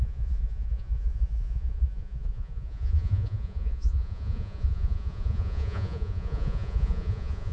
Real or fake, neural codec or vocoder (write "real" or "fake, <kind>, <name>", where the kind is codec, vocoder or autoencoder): fake, vocoder, Vocos